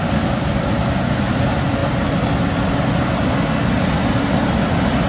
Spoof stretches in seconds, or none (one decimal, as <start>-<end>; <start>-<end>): none